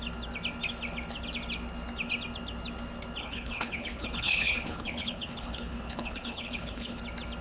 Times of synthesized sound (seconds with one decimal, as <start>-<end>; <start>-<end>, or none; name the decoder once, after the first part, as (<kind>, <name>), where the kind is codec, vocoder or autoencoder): 3.2-7.0 (codec, HILCodec)

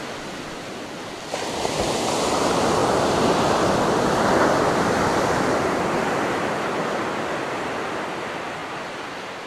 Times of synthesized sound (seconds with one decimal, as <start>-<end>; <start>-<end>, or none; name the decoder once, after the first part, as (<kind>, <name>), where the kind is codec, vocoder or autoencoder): none

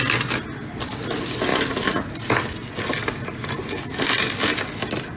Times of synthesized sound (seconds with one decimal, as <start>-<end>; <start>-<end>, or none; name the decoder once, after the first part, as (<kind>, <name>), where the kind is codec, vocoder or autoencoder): none

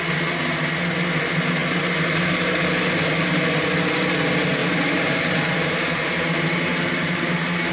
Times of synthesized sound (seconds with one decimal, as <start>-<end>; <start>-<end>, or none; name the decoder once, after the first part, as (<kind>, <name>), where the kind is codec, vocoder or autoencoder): 4.6-7.7 (vocoder, BigVGAN v2)